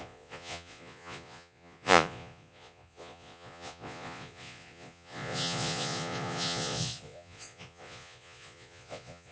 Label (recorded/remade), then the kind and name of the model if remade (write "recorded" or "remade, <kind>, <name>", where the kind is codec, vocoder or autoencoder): remade, vocoder, Vocos